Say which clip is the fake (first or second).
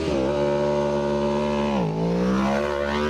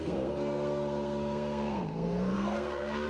second